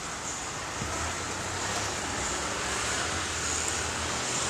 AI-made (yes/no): no